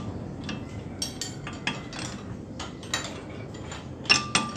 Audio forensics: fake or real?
real